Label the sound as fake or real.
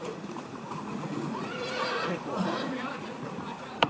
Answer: fake